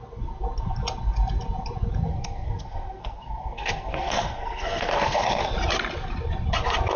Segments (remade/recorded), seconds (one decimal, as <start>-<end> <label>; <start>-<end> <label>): 0.0-2.1 recorded; 2.1-5.4 remade; 5.4-7.0 recorded